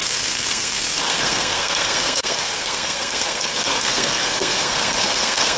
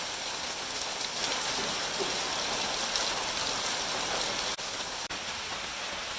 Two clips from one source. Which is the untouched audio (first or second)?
second